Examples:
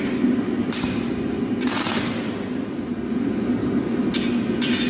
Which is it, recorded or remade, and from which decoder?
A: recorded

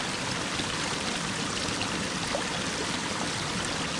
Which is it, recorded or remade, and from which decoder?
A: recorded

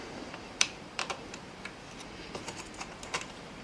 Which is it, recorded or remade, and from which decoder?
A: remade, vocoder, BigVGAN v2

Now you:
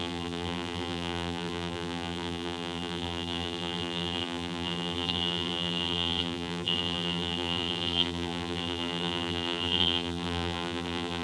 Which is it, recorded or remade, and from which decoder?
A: remade, vocoder, BigVGAN v2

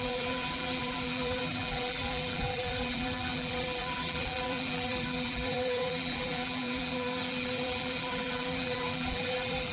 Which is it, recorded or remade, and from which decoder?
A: remade, vocoder, BigVGAN v2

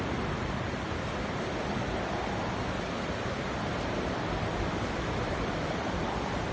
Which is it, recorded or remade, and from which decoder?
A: remade, vocoder, BigVGAN v2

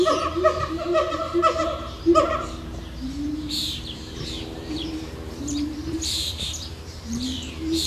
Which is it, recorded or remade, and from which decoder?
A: remade, vocoder, BigVGAN v2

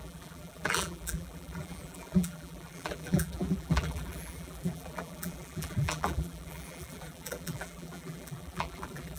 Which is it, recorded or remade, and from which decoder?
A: remade, vocoder, BigVGAN v2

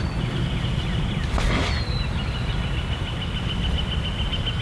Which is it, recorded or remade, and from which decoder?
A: recorded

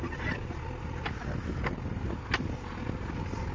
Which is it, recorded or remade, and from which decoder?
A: recorded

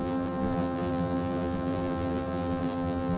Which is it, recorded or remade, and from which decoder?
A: remade, vocoder, BigVGAN v2